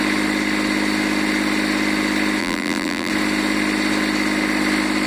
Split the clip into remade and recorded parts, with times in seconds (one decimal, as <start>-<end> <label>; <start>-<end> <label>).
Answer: 0.0-2.4 recorded; 2.4-3.1 remade; 3.1-5.1 recorded